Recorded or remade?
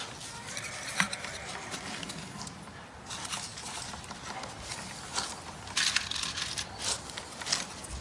recorded